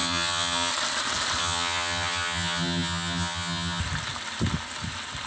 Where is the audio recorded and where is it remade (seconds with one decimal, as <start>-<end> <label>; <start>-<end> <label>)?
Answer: 0.0-0.7 remade; 0.7-1.4 recorded; 1.4-3.8 remade; 3.8-5.3 recorded